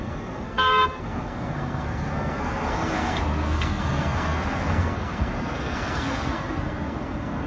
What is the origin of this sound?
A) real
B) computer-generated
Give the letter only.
B